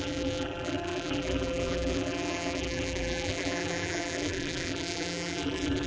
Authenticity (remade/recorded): remade